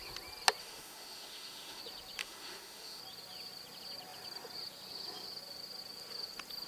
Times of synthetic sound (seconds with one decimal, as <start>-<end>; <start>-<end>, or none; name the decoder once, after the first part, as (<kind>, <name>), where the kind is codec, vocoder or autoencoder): 0.6-1.8 (autoencoder, DAC-VAE); 2.2-3.0